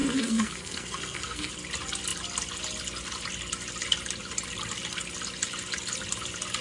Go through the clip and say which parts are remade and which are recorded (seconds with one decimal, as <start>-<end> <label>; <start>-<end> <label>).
0.0-1.5 remade; 1.5-6.6 recorded